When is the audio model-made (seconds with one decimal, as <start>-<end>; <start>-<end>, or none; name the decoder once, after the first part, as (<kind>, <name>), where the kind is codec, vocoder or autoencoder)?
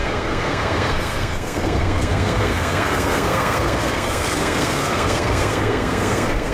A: 0.0-6.5 (codec, SNAC)